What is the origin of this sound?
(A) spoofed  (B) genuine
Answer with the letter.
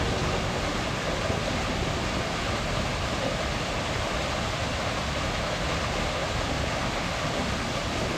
B